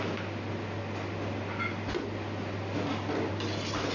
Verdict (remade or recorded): recorded